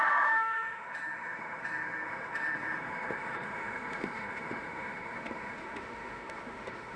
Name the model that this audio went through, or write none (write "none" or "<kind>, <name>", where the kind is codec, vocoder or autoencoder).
autoencoder, DAC-VAE